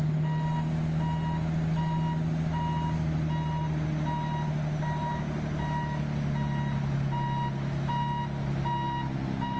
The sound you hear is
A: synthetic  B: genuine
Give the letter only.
B